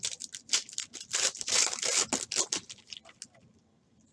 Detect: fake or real real